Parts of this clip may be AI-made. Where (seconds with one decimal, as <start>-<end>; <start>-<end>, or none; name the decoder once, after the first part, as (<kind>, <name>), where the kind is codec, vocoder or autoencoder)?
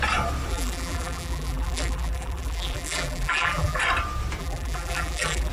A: 0.5-3.8 (vocoder, BigVGAN v2); 4.4-5.5